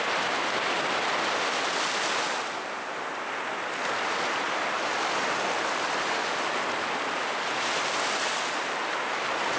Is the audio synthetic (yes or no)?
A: no